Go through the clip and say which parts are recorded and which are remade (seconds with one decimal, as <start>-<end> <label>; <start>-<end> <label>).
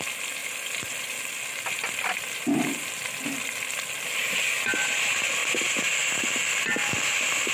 0.0-7.5 recorded